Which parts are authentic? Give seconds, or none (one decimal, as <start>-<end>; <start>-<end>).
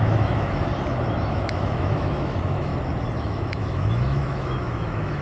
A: 0.7-1.3; 2.7-3.2